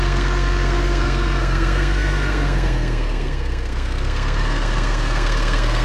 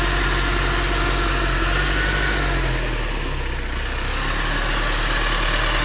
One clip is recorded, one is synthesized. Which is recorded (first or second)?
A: second